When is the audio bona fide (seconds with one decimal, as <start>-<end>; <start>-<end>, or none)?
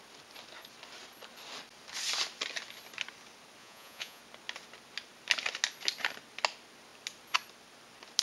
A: 0.0-3.6; 4.2-8.2